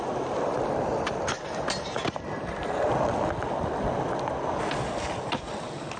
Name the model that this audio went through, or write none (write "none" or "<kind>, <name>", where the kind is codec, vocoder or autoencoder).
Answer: none